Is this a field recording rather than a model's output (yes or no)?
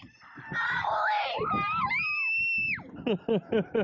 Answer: yes